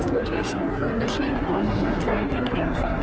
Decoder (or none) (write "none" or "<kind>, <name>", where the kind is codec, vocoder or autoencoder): codec, SNAC